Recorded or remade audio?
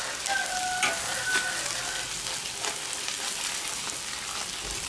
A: recorded